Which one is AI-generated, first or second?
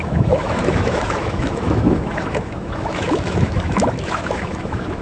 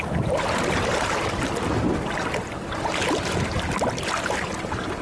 first